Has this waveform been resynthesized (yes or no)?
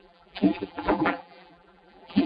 yes